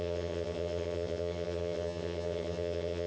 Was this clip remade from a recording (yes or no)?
yes